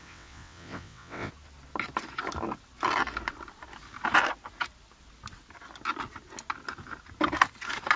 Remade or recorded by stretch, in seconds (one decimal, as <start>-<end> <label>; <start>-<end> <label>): 0.0-1.3 remade; 1.3-8.0 recorded